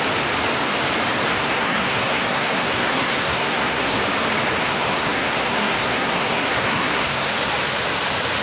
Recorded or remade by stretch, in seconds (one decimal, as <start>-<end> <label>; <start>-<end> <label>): 0.0-1.3 recorded; 1.3-4.0 remade; 4.0-4.6 recorded; 4.6-7.3 remade; 7.3-8.4 recorded